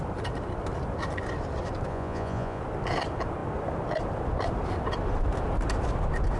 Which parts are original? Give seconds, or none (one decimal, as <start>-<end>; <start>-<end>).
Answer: 0.0-1.9; 2.6-6.4